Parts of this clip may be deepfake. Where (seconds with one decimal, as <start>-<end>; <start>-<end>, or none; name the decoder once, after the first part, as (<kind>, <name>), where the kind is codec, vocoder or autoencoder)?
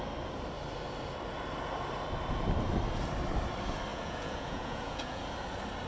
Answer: 3.9-5.2 (vocoder, Vocos)